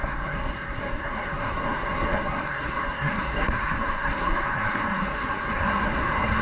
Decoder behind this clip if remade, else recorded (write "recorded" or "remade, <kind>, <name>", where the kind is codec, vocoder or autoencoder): remade, codec, SNAC